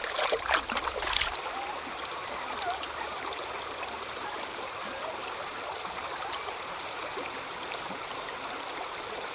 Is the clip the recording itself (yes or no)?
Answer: no